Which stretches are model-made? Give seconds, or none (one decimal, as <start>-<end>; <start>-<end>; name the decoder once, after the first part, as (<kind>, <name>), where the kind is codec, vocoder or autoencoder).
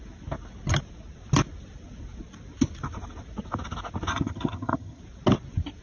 4.1-5.0 (vocoder, HiFi-GAN)